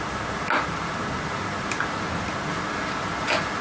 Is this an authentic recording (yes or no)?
yes